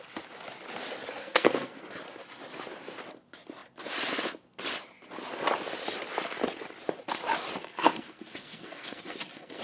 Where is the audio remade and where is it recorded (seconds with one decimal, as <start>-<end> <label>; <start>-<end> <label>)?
0.0-1.2 recorded; 1.2-1.8 remade; 1.8-7.6 recorded; 7.6-9.6 remade